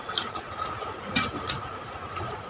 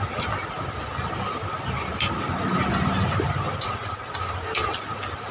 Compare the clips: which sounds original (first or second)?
second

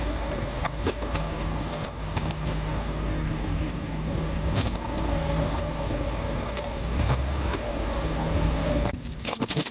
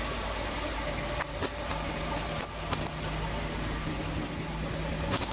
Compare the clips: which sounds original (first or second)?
second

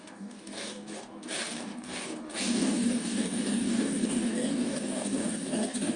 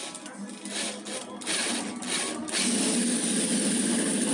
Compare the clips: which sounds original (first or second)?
second